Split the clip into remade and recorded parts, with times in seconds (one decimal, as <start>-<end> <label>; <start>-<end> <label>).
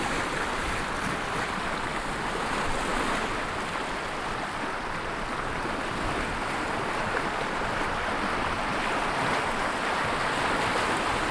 0.0-11.3 recorded